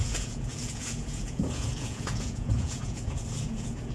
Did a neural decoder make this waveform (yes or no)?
yes